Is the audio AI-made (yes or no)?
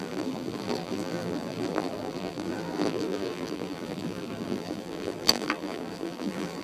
yes